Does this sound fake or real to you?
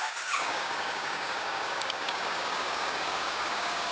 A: fake